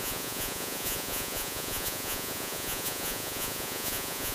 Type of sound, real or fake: fake